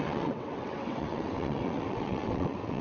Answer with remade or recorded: remade